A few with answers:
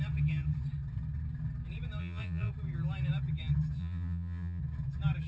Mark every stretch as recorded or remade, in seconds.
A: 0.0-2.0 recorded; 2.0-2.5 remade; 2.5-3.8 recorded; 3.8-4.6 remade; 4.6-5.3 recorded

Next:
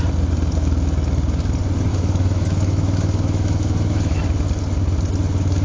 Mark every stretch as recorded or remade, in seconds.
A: 0.0-1.9 recorded; 1.9-4.2 remade; 4.2-5.6 recorded

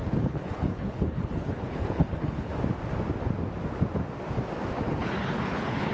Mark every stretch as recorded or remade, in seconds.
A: 0.0-2.5 remade; 2.5-4.7 recorded; 4.7-5.9 remade

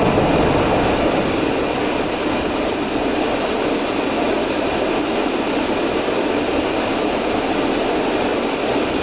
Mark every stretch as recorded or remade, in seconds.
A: 0.0-9.0 recorded

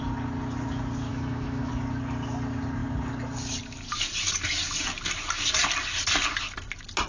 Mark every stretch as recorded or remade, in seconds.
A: 0.0-1.1 recorded; 1.1-1.7 remade; 1.7-7.1 recorded